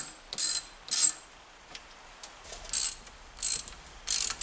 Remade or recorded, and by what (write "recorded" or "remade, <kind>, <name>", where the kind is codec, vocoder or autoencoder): recorded